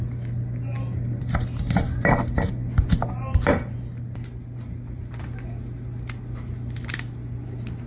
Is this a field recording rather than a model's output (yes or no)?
yes